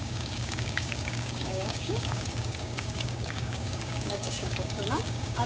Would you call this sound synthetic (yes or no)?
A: yes